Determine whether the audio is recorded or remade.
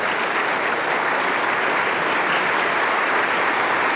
recorded